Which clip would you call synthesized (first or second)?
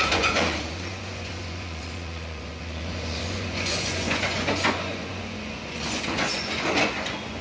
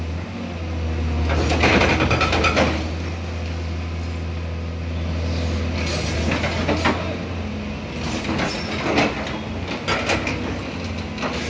first